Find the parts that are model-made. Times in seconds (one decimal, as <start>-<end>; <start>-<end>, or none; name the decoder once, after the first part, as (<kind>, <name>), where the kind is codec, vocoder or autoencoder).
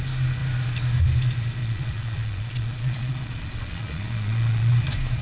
1.6-4.7 (vocoder, Vocos)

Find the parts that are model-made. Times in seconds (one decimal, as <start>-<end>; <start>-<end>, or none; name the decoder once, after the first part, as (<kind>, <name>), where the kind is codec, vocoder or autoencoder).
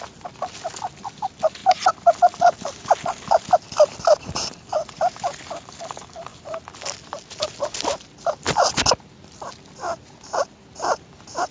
none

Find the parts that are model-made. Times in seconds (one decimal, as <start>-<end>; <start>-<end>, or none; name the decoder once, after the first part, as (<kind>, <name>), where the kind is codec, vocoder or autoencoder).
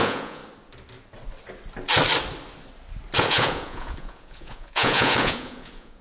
0.0-0.4 (vocoder, Vocos); 3.2-6.0